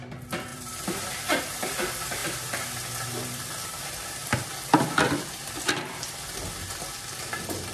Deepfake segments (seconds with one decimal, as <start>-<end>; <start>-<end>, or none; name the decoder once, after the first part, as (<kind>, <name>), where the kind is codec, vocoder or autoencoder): 0.5-1.4 (vocoder, BigVGAN v2); 2.2-3.4